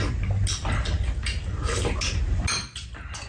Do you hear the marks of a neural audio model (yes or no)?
no